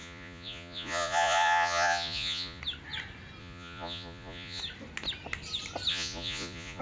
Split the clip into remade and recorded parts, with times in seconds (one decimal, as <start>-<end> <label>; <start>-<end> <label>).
0.0-2.6 remade; 2.6-3.4 recorded; 3.4-4.6 remade; 4.6-5.9 recorded; 5.9-6.8 remade